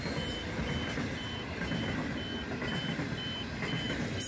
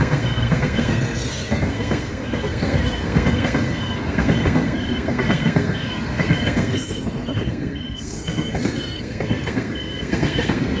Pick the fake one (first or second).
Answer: second